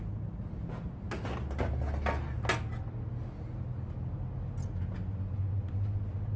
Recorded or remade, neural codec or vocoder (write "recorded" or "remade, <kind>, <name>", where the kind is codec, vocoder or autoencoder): recorded